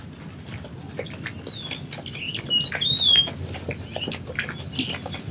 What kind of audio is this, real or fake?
real